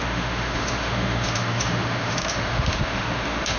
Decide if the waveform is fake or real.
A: fake